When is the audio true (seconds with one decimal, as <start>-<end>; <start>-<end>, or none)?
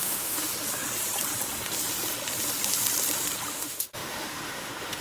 0.5-3.5